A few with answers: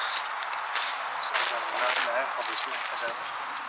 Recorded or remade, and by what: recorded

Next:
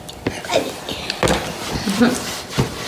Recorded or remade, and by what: recorded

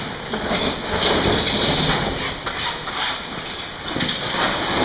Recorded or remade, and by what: recorded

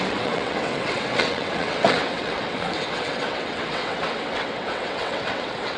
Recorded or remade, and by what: remade, vocoder, WaveNeXt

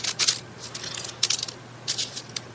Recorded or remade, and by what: recorded